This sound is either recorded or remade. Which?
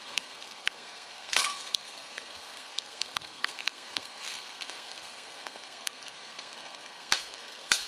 remade